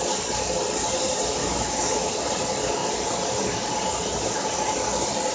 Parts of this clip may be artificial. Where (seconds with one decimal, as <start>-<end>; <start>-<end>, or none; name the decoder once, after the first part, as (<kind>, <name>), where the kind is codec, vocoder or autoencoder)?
1.4-2.1 (autoencoder, DAC-VAE)